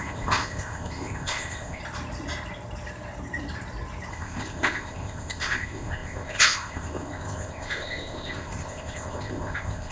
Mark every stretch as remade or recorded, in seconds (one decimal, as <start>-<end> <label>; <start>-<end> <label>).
0.0-1.8 remade; 1.8-4.1 recorded; 4.1-9.9 remade

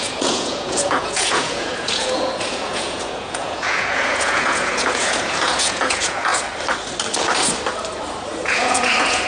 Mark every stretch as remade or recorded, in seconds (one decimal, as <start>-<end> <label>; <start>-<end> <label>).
0.0-6.3 remade; 6.3-8.4 recorded; 8.4-9.3 remade